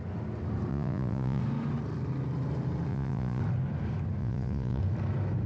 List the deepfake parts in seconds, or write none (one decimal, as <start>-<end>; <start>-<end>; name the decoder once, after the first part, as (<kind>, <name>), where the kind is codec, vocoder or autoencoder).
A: 0.7-1.4 (vocoder, Vocos); 2.9-3.4; 4.2-4.8